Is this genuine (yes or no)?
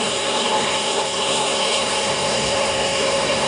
no